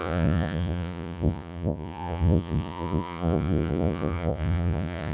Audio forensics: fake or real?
fake